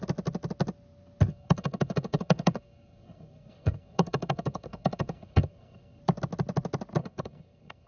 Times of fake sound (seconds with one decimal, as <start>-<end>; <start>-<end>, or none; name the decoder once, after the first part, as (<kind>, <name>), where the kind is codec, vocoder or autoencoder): 1.3-6.0 (codec, SNAC); 7.0-7.9